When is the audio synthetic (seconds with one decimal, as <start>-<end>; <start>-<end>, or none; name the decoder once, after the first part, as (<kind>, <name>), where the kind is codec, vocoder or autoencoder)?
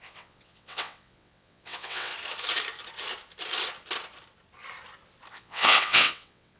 0.0-2.1 (vocoder, WaveNeXt); 5.3-6.6